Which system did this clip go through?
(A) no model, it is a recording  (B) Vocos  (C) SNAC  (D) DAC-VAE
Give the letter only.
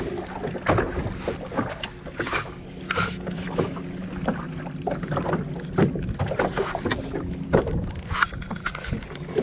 A